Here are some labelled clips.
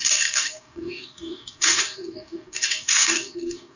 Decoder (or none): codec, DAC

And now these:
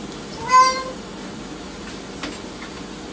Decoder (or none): none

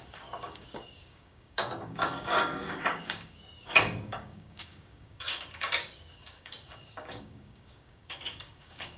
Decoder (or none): codec, DAC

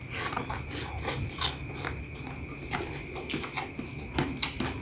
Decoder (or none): none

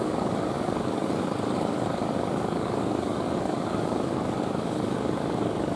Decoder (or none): codec, DAC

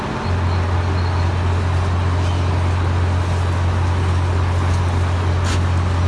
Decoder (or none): none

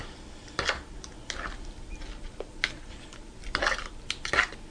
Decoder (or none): none